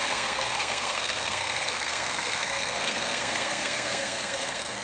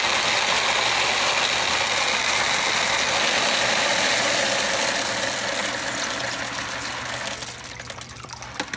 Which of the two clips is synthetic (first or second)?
first